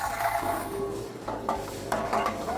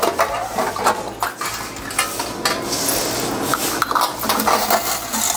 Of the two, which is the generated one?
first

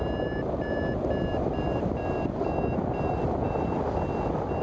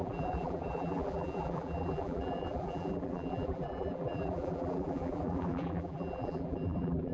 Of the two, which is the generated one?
second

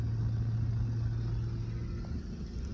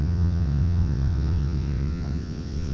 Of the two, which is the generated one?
second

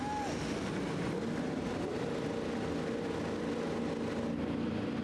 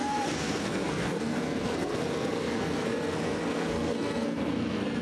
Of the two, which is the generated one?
second